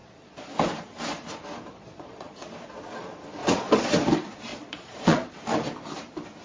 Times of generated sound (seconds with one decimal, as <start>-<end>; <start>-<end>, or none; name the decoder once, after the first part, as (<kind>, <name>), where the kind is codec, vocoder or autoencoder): 0.0-0.5 (vocoder, Vocos); 1.7-2.5; 3.4-3.9; 4.5-5.3